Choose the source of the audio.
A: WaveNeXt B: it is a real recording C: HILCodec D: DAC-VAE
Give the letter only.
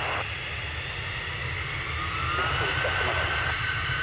B